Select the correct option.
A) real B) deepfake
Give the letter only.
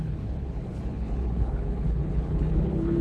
B